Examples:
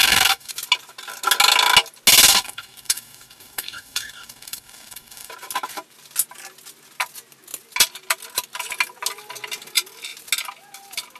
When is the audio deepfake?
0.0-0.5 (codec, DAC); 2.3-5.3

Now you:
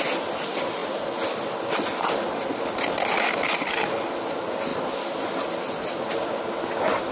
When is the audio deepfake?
none

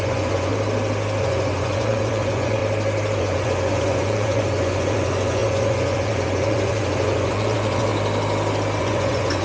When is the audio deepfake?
0.0-0.5 (vocoder, Vocos); 1.2-2.6; 3.2-7.9; 8.8-9.4

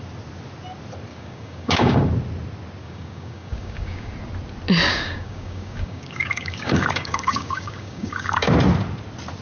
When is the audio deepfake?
1.1-2.0 (codec, DAC); 2.8-4.1; 4.9-8.5

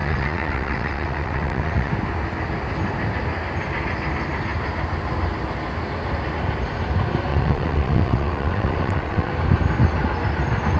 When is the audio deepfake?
0.0-1.9 (vocoder, WaveNeXt); 7.3-9.3

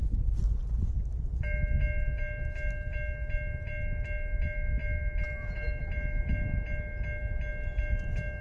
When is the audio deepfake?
none